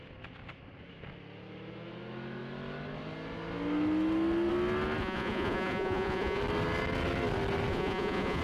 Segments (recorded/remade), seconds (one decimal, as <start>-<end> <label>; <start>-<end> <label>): 0.0-5.0 recorded; 5.0-6.4 remade; 6.4-7.7 recorded; 7.7-8.4 remade